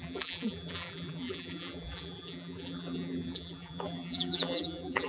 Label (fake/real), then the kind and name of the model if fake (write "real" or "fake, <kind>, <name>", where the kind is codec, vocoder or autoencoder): fake, vocoder, BigVGAN v2